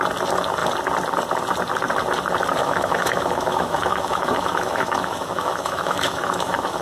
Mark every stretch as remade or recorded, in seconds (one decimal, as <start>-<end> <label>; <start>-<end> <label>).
0.0-2.6 recorded; 2.6-6.8 remade